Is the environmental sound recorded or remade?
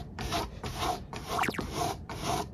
remade